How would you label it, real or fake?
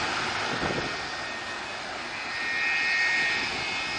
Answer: real